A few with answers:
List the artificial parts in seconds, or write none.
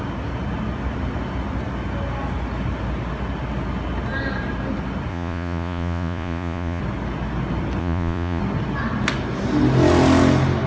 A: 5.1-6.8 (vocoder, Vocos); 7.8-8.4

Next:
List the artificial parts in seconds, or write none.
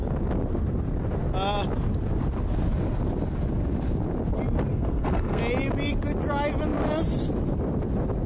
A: 4.7-5.4 (codec, SNAC)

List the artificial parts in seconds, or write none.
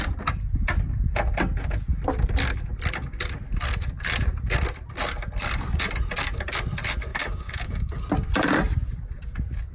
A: 7.1-8.0 (codec, DAC)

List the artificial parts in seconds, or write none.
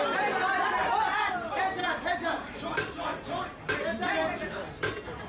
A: none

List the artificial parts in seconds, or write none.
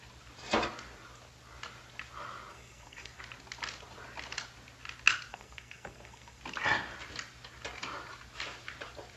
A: 2.5-3.2 (codec, SNAC); 5.3-6.4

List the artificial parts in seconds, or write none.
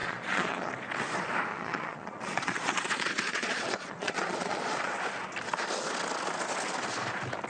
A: 0.0-0.7 (vocoder, Vocos); 1.5-5.0